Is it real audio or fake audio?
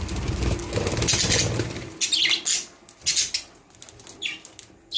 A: real